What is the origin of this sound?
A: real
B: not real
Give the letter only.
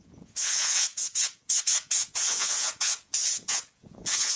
B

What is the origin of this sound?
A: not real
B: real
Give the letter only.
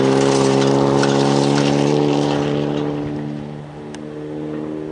B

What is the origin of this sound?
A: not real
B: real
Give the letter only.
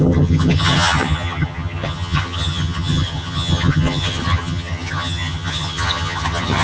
A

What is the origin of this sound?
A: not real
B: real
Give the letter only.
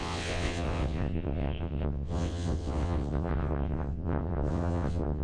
A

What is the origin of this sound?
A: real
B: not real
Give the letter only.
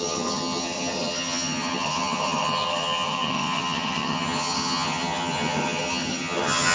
B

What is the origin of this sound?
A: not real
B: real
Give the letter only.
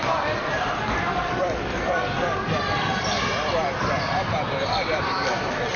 A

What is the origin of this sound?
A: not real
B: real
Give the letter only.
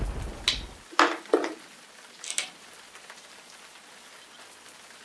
B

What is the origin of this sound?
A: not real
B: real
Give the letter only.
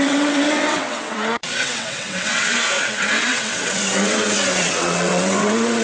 A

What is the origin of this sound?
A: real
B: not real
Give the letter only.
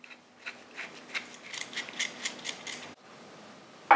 A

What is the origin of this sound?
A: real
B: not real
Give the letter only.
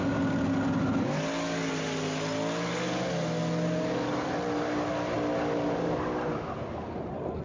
A